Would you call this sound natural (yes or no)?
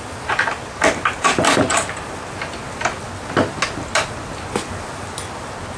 yes